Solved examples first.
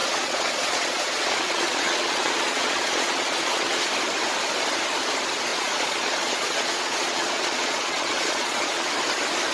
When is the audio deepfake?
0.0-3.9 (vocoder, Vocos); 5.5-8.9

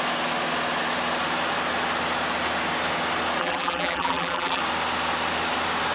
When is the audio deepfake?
3.4-4.6 (vocoder, BigVGAN v2)

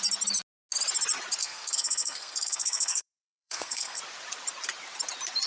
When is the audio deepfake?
1.4-4.0 (codec, SNAC)

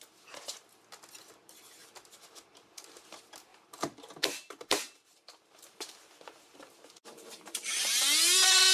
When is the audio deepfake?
3.5-7.7 (vocoder, BigVGAN v2)